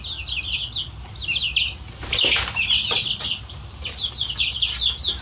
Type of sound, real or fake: real